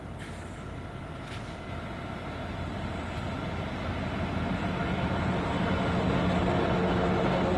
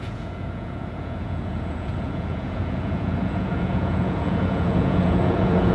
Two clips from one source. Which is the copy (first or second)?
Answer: second